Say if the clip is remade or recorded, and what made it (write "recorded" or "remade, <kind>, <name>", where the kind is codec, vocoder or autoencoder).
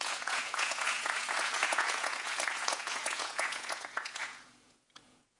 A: remade, vocoder, Vocos